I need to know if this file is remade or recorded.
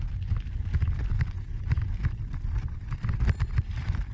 recorded